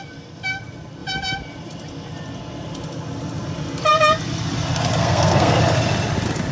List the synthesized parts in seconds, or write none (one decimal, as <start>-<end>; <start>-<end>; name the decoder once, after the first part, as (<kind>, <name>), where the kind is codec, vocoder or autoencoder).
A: 5.0-5.6 (codec, SNAC)